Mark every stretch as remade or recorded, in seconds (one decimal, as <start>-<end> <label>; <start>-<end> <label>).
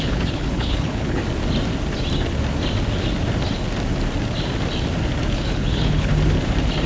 0.0-1.2 remade; 1.2-5.3 recorded; 5.3-6.1 remade; 6.1-6.9 recorded